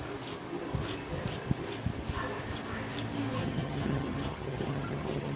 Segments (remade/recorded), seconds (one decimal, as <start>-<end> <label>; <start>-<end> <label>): 0.0-3.4 recorded; 3.4-5.4 remade